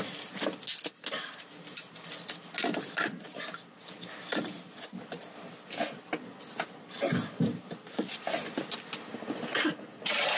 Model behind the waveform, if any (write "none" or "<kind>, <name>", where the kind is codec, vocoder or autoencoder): none